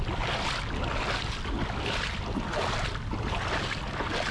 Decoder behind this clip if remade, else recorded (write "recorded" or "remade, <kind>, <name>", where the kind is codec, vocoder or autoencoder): recorded